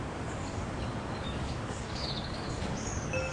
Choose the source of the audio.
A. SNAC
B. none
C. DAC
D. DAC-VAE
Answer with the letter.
C